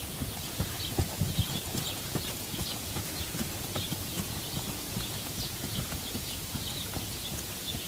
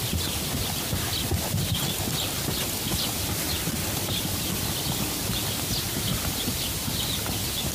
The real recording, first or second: second